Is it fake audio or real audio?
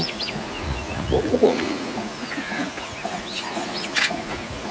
fake